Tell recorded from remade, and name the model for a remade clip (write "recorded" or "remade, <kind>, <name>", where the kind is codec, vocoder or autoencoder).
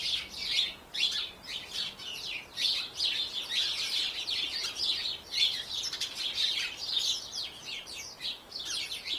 remade, vocoder, BigVGAN v2